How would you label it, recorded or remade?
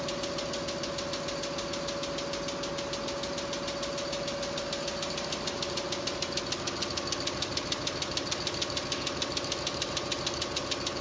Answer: recorded